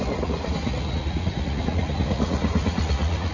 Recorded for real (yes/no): no